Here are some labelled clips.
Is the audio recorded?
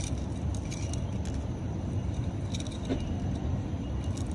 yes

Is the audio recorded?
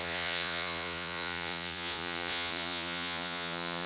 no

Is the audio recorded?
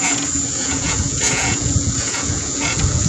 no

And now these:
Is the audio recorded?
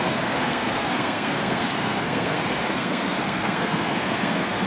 no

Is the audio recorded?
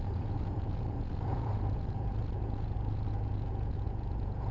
no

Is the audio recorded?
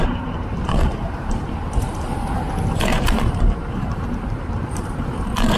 no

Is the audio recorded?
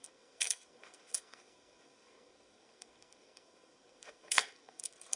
no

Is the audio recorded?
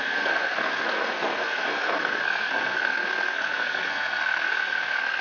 no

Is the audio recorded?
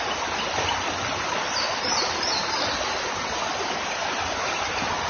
yes